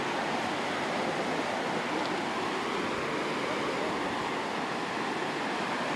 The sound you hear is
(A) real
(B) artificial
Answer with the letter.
A